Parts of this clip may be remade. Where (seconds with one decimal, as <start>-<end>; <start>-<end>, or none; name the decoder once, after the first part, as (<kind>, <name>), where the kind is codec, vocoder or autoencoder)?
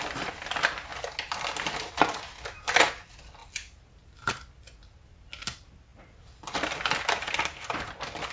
none